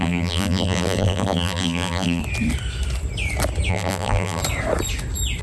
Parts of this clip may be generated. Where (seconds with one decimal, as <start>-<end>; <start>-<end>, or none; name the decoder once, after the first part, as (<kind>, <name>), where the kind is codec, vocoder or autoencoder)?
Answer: 0.0-2.2 (vocoder, BigVGAN v2); 3.7-4.4